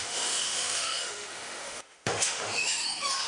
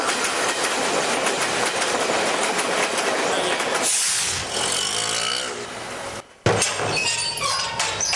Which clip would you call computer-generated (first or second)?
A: first